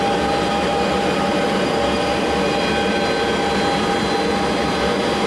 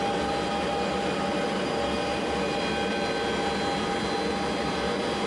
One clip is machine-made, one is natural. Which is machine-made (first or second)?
first